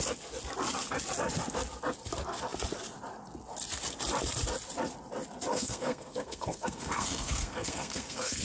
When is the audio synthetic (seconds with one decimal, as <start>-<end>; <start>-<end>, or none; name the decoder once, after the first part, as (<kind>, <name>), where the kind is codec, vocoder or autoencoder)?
5.5-8.4 (codec, SNAC)